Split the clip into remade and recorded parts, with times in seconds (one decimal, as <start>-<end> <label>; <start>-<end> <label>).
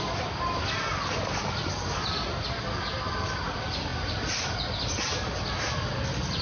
0.0-6.4 recorded